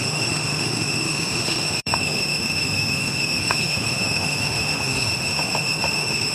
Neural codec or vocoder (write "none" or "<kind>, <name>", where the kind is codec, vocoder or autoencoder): autoencoder, DAC-VAE